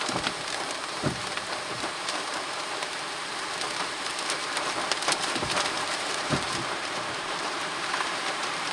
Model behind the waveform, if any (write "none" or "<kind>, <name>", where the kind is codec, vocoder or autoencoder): vocoder, BigVGAN v2